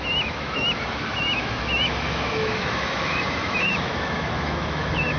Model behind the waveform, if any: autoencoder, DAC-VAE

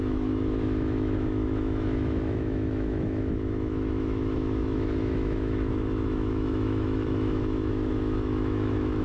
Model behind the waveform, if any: autoencoder, DAC-VAE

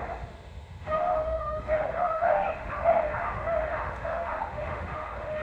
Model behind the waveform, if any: autoencoder, DAC-VAE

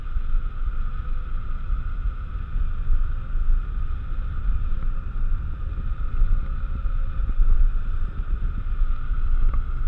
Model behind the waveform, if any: none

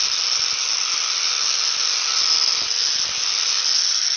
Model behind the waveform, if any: none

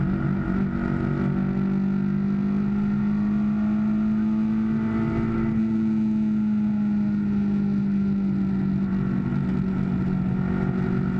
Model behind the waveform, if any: none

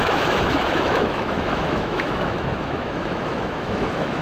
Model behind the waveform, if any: autoencoder, DAC-VAE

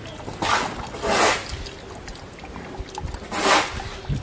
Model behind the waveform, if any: none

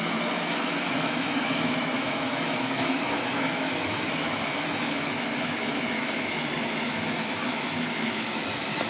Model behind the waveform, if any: autoencoder, DAC-VAE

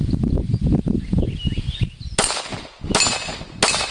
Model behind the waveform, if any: none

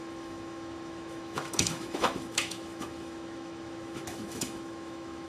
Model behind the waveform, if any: autoencoder, DAC-VAE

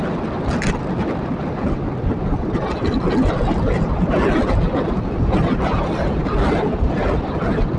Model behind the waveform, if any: none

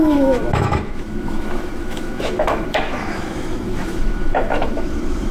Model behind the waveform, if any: autoencoder, DAC-VAE